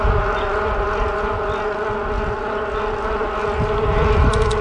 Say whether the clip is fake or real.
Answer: real